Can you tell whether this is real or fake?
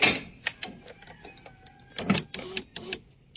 real